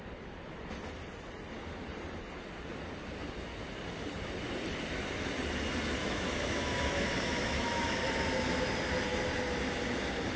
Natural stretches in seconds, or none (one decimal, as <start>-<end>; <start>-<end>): 0.0-6.0; 8.0-10.4